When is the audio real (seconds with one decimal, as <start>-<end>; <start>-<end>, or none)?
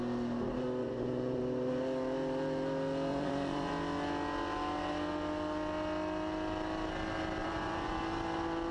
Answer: 0.0-0.8; 1.4-3.1; 3.7-7.4; 8.0-8.7